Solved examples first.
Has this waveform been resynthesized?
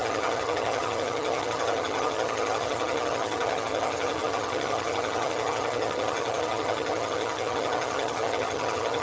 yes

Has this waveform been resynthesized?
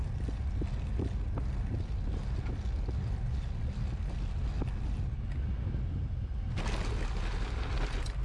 no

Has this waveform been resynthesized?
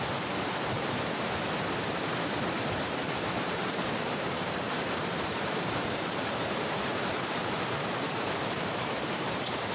yes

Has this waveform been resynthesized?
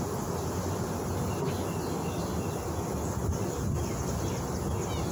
no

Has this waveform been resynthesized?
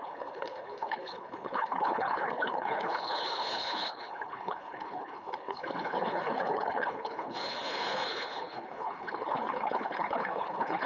yes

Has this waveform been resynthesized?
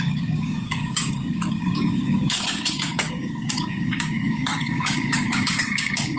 yes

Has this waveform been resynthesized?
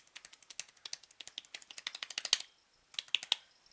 no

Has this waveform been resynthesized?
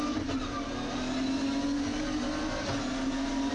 no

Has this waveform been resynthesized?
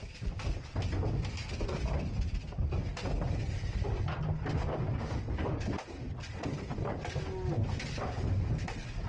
no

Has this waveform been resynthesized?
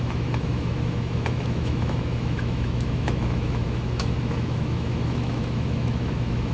yes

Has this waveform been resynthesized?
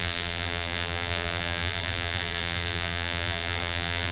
yes